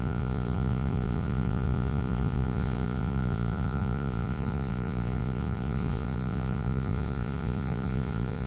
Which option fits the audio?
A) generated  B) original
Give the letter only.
A